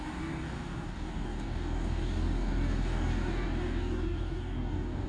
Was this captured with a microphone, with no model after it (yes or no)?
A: no